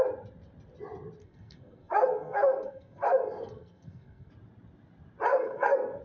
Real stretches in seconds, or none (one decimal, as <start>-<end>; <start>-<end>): 0.0-1.2; 4.3-5.3